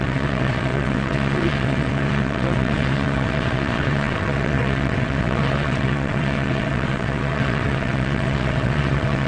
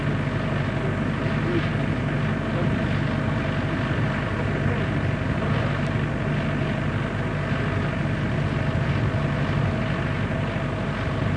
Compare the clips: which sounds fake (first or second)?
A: first